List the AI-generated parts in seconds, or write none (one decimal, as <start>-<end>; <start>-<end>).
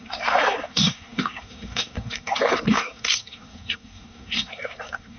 0.0-5.2